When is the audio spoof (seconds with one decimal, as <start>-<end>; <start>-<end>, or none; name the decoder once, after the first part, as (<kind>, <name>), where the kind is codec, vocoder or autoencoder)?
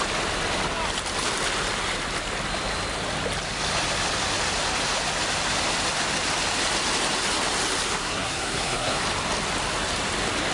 8.0-9.0 (codec, SNAC)